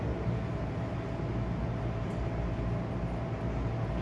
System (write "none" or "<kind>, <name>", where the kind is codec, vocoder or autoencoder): none